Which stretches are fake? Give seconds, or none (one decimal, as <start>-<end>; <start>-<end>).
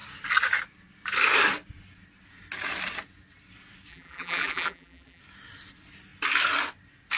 3.9-5.2